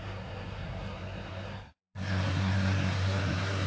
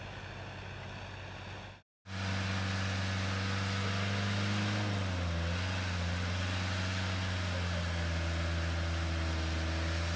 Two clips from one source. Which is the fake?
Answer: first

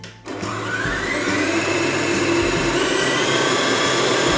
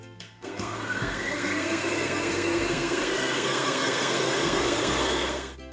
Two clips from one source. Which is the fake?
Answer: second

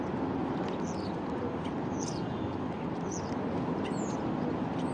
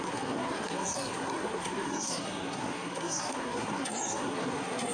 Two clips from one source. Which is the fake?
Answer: second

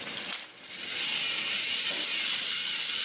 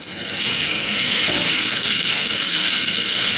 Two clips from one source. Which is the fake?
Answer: second